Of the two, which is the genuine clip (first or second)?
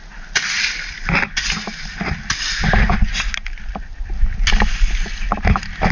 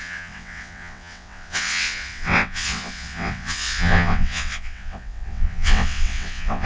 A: first